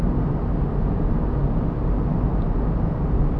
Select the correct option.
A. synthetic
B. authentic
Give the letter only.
B